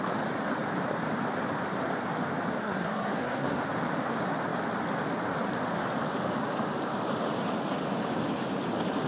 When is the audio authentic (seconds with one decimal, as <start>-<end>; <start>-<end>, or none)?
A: 0.0-2.6; 3.6-9.1